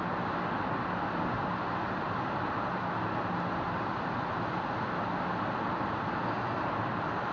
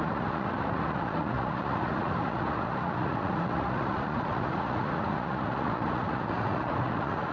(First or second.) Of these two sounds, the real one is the first